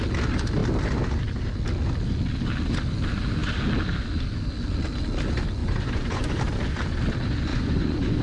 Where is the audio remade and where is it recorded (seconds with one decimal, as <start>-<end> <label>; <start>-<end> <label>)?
0.0-5.6 recorded; 5.6-6.4 remade; 6.4-7.5 recorded; 7.5-8.2 remade